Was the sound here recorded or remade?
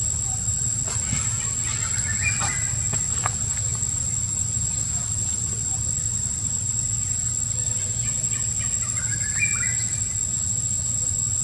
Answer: recorded